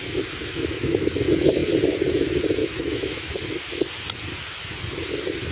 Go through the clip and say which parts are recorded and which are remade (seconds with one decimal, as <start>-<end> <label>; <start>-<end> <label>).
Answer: 0.0-0.4 recorded; 0.4-1.1 remade; 1.1-2.6 recorded; 2.6-3.3 remade; 3.3-5.5 recorded